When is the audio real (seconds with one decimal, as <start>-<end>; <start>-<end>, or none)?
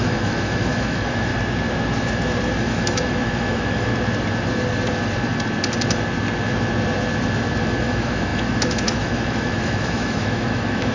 1.3-2.6; 3.9-7.8